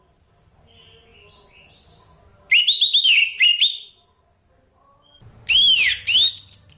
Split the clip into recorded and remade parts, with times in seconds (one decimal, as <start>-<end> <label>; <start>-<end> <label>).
0.0-6.8 recorded